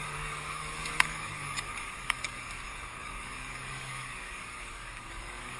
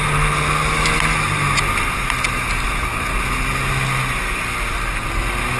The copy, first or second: first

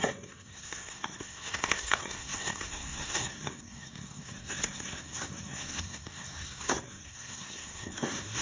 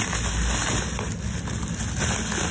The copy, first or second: first